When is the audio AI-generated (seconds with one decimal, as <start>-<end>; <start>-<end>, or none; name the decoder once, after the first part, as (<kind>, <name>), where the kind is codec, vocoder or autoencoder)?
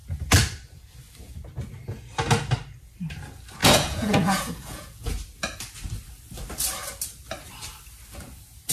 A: 3.6-5.1 (vocoder, Vocos)